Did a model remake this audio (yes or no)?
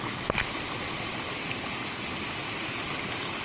no